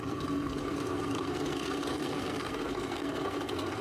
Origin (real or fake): fake